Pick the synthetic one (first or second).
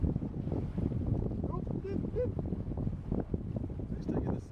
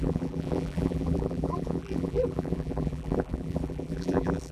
second